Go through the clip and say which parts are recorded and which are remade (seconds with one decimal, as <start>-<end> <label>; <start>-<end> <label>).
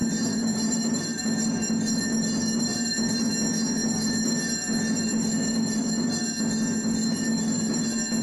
0.0-1.2 remade; 1.2-2.7 recorded; 2.7-3.3 remade; 3.3-8.2 recorded